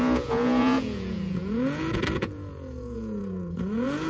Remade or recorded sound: remade